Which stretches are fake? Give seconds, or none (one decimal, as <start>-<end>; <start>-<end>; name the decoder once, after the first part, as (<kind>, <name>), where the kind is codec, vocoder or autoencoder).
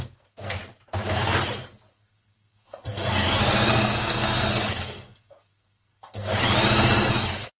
0.0-0.6 (codec, SNAC); 1.9-6.3; 7.1-7.6